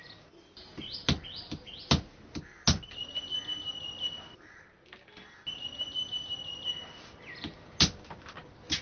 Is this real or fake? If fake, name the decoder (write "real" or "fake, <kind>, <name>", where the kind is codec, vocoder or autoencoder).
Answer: real